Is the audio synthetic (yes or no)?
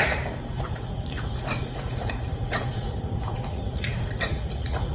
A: yes